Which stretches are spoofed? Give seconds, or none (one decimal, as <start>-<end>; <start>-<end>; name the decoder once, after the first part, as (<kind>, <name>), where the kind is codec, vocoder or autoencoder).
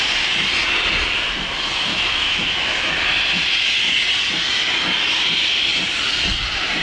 1.9-2.9 (autoencoder, DAC-VAE)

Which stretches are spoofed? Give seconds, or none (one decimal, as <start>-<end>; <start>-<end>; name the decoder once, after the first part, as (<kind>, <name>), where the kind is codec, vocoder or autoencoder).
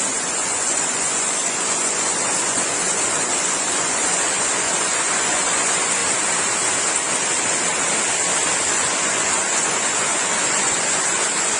0.0-6.0 (vocoder, Vocos); 8.7-11.6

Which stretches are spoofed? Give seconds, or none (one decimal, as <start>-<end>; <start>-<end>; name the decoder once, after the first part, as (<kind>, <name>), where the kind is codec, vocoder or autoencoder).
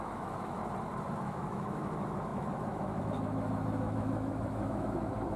0.0-0.6 (autoencoder, DAC-VAE); 1.1-5.4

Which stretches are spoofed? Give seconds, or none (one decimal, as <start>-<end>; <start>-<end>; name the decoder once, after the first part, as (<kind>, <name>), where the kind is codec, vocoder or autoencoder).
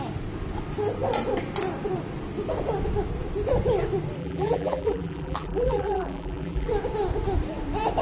4.2-6.7 (vocoder, BigVGAN v2)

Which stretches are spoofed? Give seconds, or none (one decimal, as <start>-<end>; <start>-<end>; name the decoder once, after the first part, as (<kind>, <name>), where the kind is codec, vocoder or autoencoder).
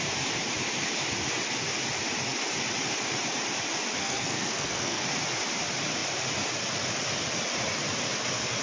4.0-5.0 (codec, SNAC)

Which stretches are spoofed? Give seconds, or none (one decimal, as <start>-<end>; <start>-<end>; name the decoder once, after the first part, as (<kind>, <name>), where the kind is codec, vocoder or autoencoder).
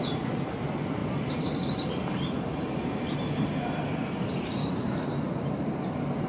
none